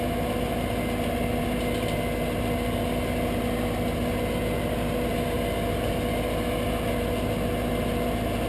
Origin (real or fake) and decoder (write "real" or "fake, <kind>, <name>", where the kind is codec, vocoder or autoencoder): real